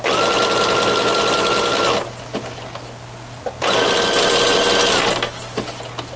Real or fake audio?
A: real